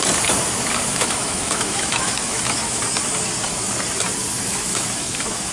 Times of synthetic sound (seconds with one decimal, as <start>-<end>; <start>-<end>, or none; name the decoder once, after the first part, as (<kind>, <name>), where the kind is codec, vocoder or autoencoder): 0.9-2.8 (autoencoder, DAC-VAE); 4.5-5.5